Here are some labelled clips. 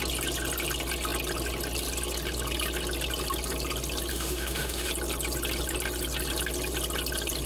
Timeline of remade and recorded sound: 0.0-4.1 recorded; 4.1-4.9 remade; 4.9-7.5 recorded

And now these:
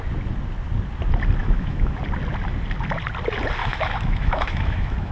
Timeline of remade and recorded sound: 0.0-1.4 recorded; 1.4-2.0 remade; 2.0-3.6 recorded; 3.6-5.1 remade

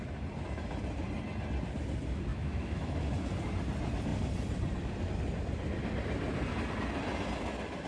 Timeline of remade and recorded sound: 0.0-2.3 recorded; 2.3-3.0 remade; 3.0-7.9 recorded

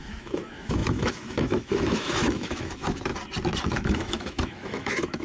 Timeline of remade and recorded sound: 0.0-3.1 remade; 3.1-3.6 recorded; 3.6-5.2 remade

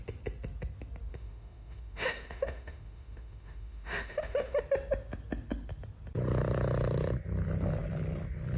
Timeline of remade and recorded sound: 0.0-1.1 recorded; 1.1-4.6 remade; 4.6-8.6 recorded

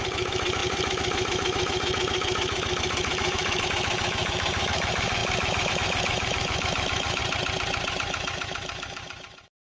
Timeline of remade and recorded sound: 0.0-7.2 remade; 7.2-7.9 recorded; 7.9-9.7 remade